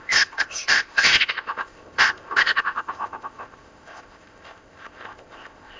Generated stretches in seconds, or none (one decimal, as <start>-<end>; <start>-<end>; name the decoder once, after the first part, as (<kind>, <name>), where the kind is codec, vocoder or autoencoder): 0.0-5.8 (codec, ZipCodec)